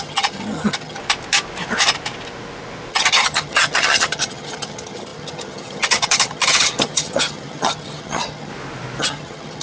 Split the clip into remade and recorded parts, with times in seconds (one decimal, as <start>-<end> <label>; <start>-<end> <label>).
0.0-1.0 remade; 1.0-2.9 recorded; 2.9-8.5 remade; 8.5-9.0 recorded; 9.0-9.6 remade